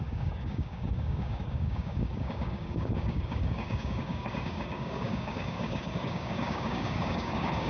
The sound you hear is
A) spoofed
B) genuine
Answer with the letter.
A